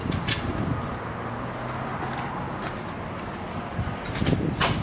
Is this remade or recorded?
recorded